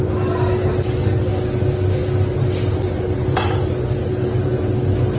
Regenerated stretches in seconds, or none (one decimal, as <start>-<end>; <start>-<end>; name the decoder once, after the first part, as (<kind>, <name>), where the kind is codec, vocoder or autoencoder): none